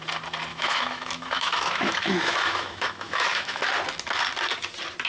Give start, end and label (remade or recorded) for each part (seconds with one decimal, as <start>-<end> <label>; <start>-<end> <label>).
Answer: 0.0-0.5 recorded; 0.5-3.6 remade; 3.6-5.1 recorded